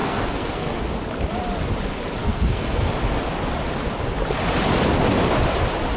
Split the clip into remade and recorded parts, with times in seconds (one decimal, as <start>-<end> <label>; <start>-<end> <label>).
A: 0.0-0.8 remade; 0.8-2.2 recorded; 2.2-2.9 remade; 2.9-6.0 recorded